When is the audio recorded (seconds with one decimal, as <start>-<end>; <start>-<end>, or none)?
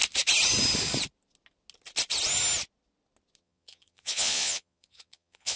0.0-3.4